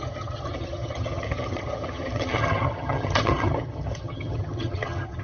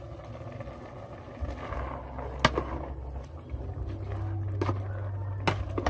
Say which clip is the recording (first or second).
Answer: second